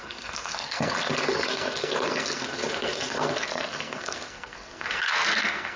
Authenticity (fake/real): fake